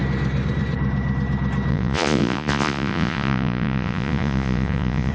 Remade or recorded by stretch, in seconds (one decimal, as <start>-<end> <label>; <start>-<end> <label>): 0.0-1.7 recorded; 1.7-5.1 remade